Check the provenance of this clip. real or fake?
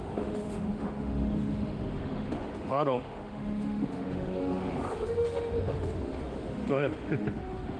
fake